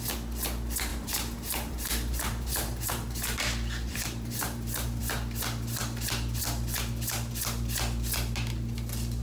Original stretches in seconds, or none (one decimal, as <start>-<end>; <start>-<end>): 0.0-0.9; 3.4-3.9; 5.0-9.2